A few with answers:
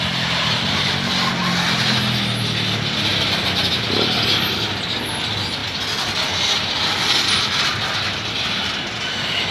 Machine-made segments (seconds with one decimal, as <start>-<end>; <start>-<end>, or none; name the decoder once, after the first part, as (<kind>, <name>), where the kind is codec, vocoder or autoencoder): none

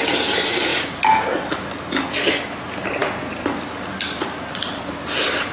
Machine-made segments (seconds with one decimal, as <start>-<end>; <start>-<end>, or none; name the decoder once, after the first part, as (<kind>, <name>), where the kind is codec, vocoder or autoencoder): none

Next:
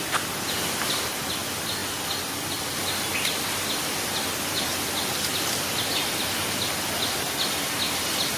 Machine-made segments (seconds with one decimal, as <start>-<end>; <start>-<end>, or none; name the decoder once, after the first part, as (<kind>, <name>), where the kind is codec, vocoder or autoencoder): none

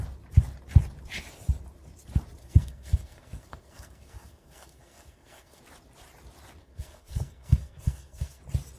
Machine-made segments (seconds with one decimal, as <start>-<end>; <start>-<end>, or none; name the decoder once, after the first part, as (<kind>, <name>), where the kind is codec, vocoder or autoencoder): 2.4-5.6 (codec, SNAC); 6.6-8.4